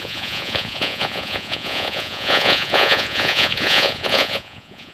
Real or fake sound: fake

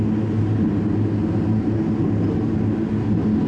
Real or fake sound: real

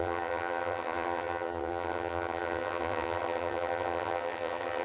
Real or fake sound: fake